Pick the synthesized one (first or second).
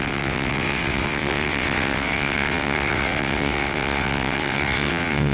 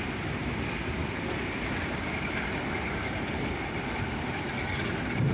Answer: first